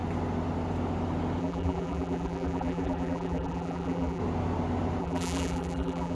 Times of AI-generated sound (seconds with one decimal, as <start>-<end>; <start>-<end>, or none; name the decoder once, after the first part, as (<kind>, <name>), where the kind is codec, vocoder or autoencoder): 1.4-4.2 (vocoder, BigVGAN v2); 5.0-6.1